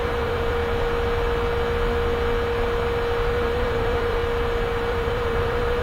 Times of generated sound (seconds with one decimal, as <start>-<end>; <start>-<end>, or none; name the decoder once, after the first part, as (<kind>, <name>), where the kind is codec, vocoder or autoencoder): 0.0-0.6 (vocoder, BigVGAN v2); 3.3-4.2; 4.9-5.8